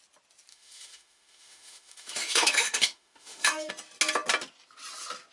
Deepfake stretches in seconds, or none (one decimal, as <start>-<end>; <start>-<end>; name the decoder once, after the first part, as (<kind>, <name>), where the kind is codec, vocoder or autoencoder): 0.5-3.7 (autoencoder, DAC-VAE)